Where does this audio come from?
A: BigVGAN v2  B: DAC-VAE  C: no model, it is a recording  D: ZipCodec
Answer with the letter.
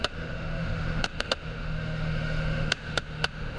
B